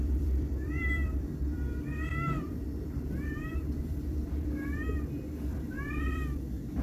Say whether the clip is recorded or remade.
remade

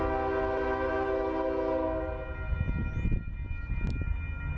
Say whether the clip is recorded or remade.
recorded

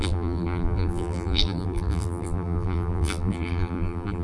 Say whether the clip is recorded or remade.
remade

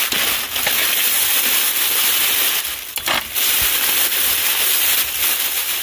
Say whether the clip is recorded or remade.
recorded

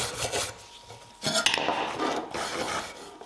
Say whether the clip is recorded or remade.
recorded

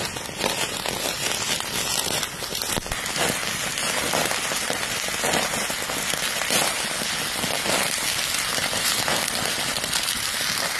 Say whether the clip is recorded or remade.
recorded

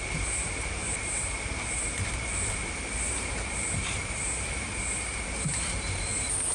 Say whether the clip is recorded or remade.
remade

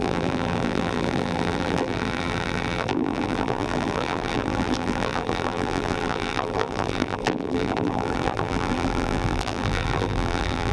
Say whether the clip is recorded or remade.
remade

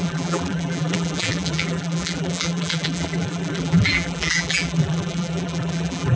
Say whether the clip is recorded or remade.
remade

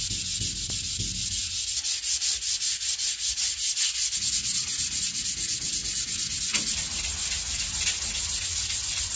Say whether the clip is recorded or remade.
recorded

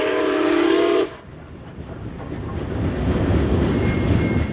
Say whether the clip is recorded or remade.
remade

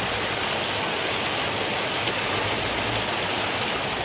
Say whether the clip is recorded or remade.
recorded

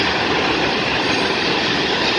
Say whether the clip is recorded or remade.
recorded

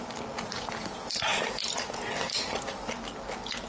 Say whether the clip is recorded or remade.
recorded